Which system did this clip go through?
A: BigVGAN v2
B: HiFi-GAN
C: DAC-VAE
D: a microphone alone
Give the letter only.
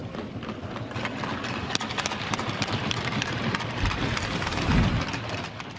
D